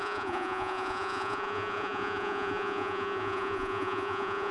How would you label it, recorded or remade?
remade